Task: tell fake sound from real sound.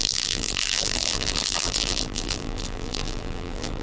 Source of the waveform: fake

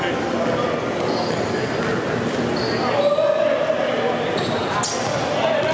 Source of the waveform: real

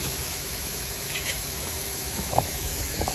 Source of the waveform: fake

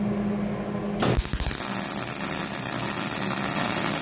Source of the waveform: real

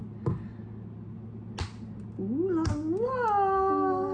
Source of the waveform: real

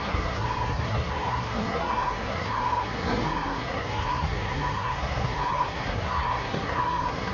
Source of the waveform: fake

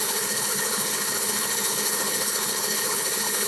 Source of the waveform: fake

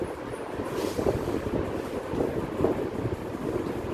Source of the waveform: real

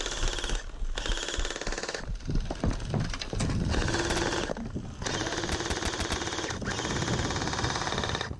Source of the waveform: real